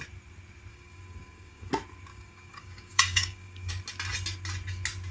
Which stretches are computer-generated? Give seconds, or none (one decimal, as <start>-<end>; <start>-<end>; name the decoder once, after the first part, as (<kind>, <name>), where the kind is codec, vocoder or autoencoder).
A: 0.7-1.7 (codec, DAC); 2.1-3.7